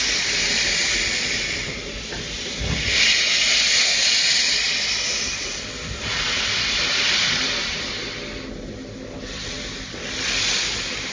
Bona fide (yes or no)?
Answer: yes